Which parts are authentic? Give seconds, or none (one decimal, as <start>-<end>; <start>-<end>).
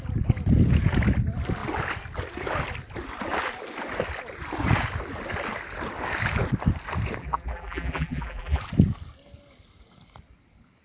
0.0-7.2; 8.6-10.8